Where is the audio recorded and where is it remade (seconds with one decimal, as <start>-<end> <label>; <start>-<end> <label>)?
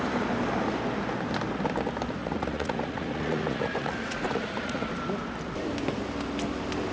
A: 0.0-2.2 recorded; 2.2-4.9 remade; 4.9-6.9 recorded